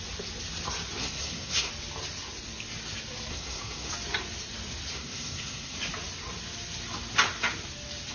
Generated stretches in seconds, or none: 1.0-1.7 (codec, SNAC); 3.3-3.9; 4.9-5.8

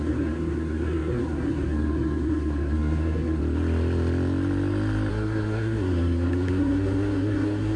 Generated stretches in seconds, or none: 0.0-3.4 (codec, SNAC); 5.1-7.8

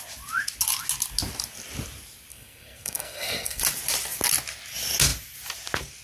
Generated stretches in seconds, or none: 2.3-3.6 (codec, SNAC)

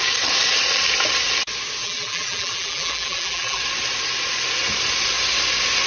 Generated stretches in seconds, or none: 1.8-3.6 (vocoder, BigVGAN v2)

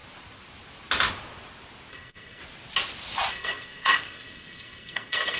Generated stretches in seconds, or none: 1.9-2.4 (codec, SNAC); 3.3-5.4